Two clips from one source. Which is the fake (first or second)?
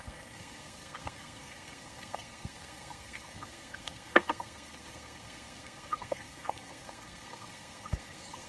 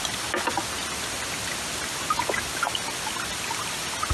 first